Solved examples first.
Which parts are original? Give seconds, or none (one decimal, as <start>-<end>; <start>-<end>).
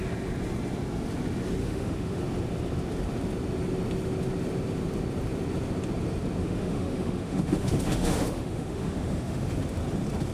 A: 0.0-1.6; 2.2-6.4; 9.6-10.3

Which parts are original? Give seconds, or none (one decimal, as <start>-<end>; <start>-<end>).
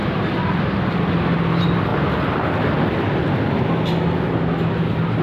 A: 0.0-5.2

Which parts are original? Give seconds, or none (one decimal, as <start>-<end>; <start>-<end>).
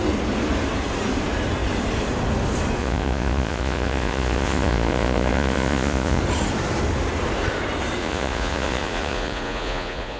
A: 0.0-2.8; 6.2-8.0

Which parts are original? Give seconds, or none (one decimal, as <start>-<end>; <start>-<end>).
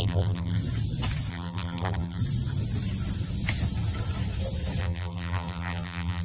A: 0.6-1.3; 2.2-4.8